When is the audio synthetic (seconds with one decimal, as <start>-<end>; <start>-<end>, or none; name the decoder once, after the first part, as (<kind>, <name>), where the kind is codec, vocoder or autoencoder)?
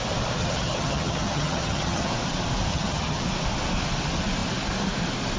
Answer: 0.4-2.1 (vocoder, HiFi-GAN); 2.7-3.2